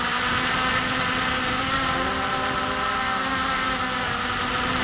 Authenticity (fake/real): real